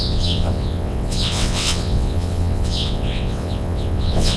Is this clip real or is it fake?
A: fake